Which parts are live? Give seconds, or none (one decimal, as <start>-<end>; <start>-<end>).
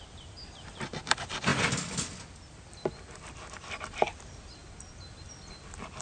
1.5-3.5; 4.6-5.2